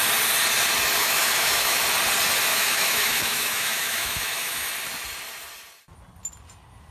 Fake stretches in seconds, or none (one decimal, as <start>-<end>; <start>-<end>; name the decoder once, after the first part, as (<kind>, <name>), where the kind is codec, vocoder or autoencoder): 1.0-1.8 (autoencoder, DAC-VAE); 2.5-4.7